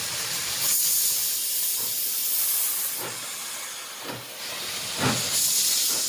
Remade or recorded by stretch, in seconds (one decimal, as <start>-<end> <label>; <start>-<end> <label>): 0.0-1.2 remade; 1.2-1.8 recorded; 1.8-2.2 remade; 2.2-6.1 recorded